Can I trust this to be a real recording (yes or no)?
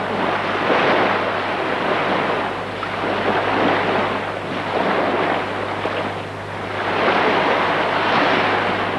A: yes